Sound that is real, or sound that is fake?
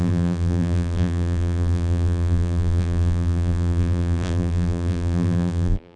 fake